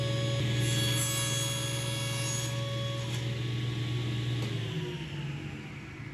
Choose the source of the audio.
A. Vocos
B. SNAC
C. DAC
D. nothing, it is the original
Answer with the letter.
D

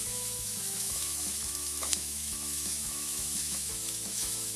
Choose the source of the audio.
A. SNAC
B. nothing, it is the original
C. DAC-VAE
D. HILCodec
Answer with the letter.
C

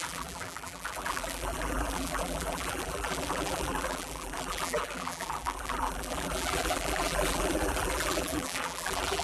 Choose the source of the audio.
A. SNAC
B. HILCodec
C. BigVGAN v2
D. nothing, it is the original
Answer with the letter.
C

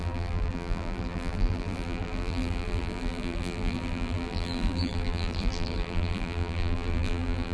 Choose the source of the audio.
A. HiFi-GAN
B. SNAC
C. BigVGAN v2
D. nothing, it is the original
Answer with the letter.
C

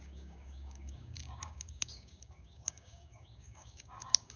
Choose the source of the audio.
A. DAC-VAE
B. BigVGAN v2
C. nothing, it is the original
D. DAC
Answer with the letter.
D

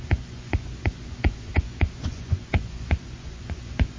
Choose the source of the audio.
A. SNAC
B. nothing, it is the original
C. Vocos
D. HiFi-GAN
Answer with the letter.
C